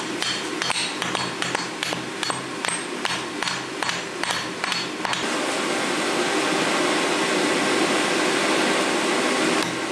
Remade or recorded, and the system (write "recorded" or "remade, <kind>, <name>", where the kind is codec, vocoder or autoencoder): recorded